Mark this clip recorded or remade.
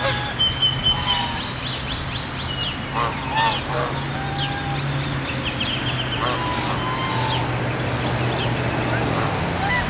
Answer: recorded